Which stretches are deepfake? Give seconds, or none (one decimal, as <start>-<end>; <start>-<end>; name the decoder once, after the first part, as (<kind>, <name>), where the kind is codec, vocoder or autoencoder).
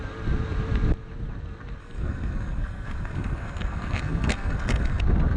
1.8-5.0 (codec, SNAC)